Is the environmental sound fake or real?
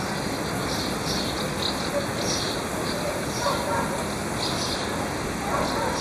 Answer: real